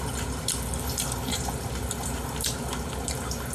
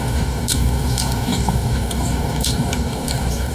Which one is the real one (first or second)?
first